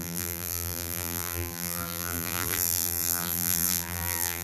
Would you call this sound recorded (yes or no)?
no